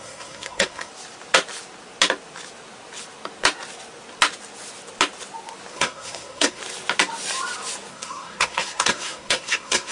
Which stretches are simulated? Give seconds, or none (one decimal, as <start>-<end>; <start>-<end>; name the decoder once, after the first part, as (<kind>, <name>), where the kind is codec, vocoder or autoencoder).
0.0-0.9 (codec, SNAC); 5.7-6.6; 7.9-9.9